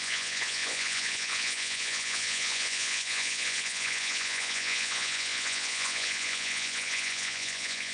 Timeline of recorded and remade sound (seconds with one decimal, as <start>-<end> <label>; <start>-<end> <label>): 0.0-7.9 remade